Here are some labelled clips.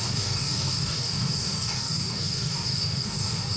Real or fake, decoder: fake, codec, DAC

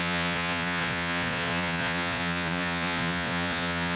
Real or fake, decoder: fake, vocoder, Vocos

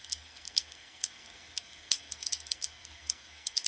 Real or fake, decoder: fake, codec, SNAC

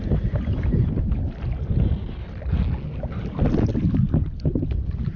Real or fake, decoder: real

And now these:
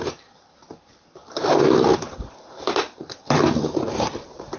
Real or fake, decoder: fake, vocoder, BigVGAN v2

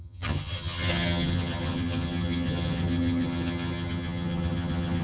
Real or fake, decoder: fake, vocoder, HiFi-GAN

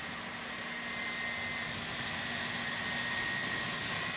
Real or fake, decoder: real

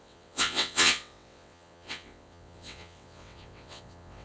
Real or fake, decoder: fake, vocoder, WaveNeXt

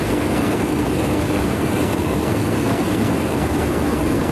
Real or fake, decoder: fake, codec, SNAC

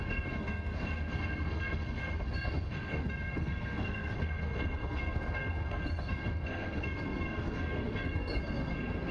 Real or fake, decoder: fake, codec, SNAC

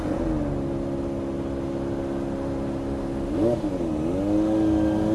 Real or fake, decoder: real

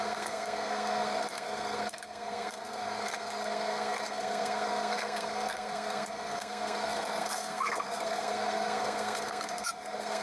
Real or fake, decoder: fake, codec, SNAC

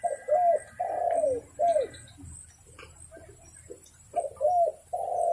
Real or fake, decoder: real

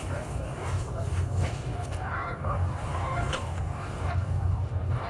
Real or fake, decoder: fake, codec, DAC